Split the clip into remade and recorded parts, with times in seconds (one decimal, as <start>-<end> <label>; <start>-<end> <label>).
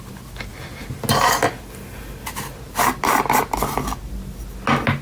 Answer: 0.0-5.0 recorded